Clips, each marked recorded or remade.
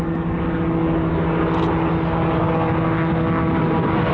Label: recorded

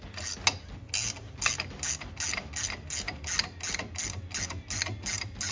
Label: recorded